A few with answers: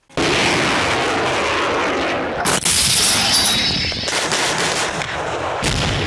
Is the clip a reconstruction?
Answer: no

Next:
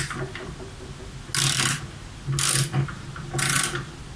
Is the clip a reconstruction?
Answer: no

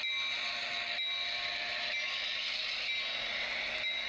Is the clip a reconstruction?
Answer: no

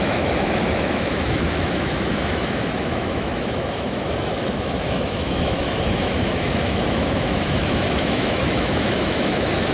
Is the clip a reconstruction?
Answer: yes